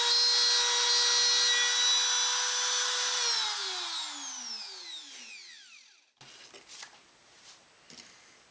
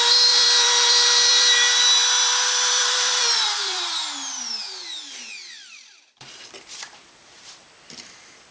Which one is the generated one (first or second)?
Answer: second